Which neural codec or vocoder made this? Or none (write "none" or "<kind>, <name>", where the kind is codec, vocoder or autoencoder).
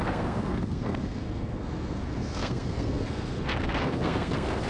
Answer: codec, SNAC